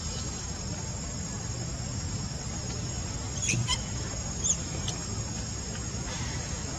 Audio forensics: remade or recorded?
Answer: recorded